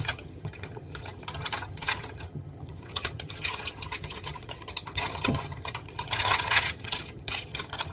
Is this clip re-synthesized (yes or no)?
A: yes